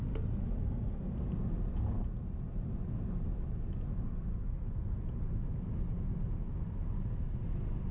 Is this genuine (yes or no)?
yes